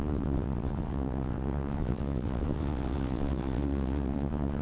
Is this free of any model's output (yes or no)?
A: no